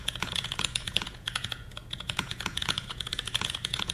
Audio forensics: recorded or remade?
remade